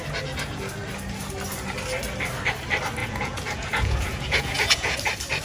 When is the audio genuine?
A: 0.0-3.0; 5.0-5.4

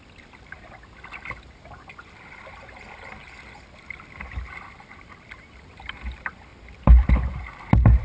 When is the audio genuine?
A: 0.0-6.5; 7.6-8.0

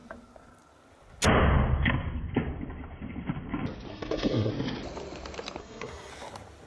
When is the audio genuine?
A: 0.0-3.9; 4.5-5.6; 6.1-6.7

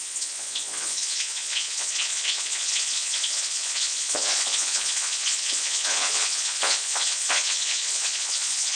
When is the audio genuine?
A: none

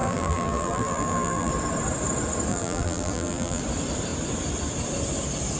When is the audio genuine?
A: 1.5-2.5; 3.6-5.6